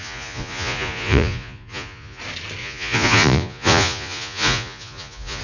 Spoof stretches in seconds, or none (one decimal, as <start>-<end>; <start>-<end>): 0.0-2.2; 2.6-5.4

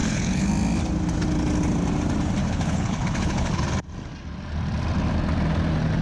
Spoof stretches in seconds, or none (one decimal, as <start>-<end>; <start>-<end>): 0.0-0.5; 2.4-3.6

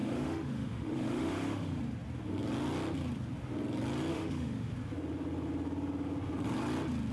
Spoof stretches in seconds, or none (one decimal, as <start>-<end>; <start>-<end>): 0.0-1.8; 4.1-4.7

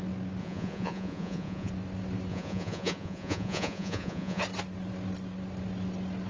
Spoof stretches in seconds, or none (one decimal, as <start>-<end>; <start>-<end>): 0.4-1.7; 2.3-4.4

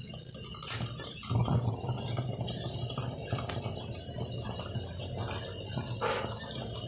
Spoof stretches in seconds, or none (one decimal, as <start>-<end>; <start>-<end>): 1.4-4.9

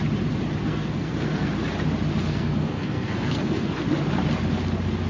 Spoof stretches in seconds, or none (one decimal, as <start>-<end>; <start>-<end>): 0.6-1.5; 2.1-3.7